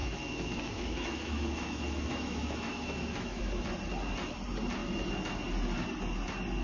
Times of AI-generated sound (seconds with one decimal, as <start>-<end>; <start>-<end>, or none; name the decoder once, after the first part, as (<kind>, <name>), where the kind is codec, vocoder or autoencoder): 0.0-3.4 (autoencoder, DAC-VAE)